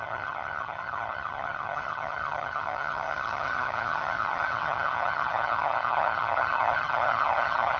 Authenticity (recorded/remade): remade